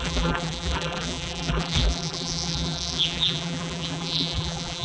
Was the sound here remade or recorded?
remade